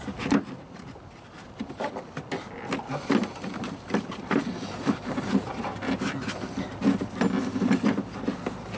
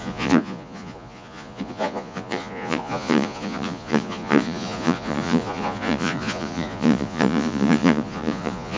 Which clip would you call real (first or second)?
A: first